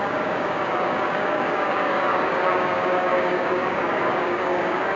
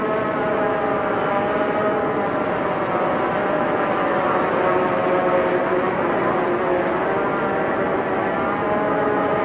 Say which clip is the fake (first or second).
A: first